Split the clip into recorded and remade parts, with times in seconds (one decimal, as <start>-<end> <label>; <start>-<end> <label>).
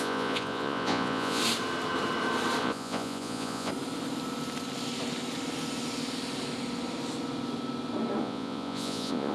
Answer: 0.0-1.4 remade; 1.4-2.6 recorded; 2.6-3.7 remade; 3.7-8.2 recorded; 8.2-9.3 remade